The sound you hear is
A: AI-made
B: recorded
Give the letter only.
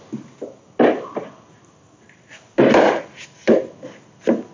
B